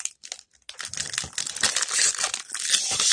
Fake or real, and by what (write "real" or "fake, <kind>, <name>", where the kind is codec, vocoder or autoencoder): real